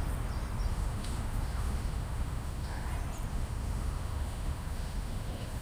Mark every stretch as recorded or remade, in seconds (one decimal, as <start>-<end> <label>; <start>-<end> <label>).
0.0-0.7 recorded; 0.7-2.9 remade; 2.9-3.3 recorded; 3.3-5.6 remade

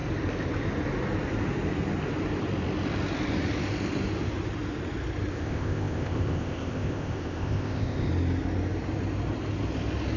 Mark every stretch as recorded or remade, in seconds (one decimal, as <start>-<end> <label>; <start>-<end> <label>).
0.0-5.3 recorded; 5.3-8.1 remade; 8.1-10.2 recorded

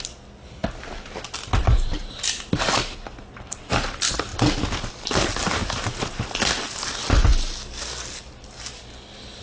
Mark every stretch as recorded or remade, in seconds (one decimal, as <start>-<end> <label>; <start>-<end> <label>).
0.0-9.4 recorded

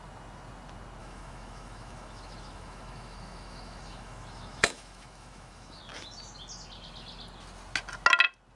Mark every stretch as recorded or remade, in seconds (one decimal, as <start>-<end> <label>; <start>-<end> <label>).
0.0-1.0 recorded; 1.0-5.8 remade; 5.8-8.6 recorded